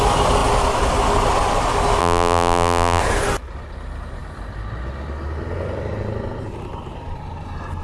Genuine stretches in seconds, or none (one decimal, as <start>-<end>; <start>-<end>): 0.0-2.0; 3.0-7.8